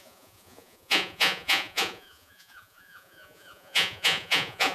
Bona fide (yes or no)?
no